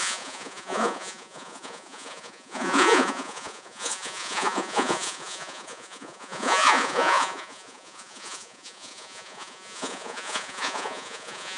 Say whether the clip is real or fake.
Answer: fake